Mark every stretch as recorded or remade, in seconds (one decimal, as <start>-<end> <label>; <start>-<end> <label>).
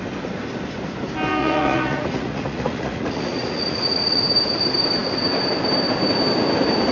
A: 0.0-1.4 recorded; 1.4-4.2 remade; 4.2-6.9 recorded